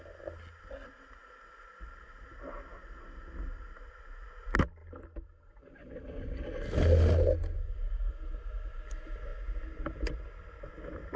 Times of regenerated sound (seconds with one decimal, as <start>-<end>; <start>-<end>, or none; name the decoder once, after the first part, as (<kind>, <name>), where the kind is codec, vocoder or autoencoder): none